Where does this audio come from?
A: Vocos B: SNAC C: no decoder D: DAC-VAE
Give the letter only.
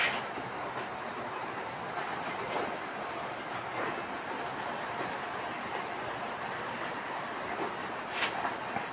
C